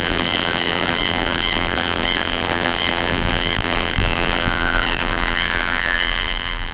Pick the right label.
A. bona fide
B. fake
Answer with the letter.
B